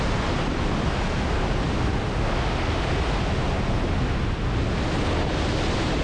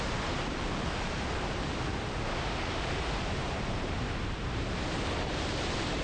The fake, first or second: second